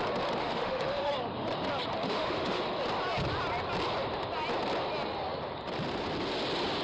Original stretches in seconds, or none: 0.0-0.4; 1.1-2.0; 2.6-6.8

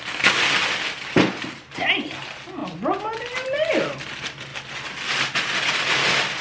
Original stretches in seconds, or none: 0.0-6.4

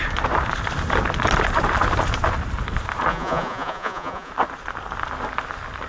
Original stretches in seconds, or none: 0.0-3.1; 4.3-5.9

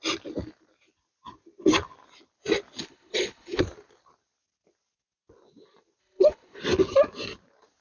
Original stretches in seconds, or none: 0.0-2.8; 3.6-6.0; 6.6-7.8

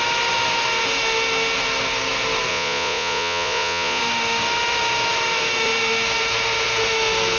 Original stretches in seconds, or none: 0.0-2.5; 4.0-7.4

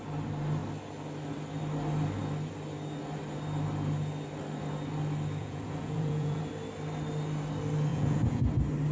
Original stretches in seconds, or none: 0.0-5.4; 6.4-7.9; 8.4-8.9

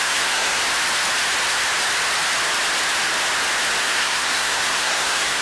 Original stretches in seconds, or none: 0.6-3.8

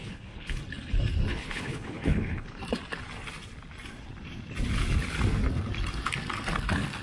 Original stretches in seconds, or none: 0.6-1.3; 2.6-7.0